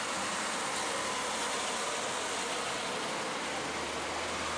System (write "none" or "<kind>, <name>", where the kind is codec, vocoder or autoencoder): none